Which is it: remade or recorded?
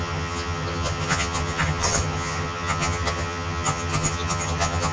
remade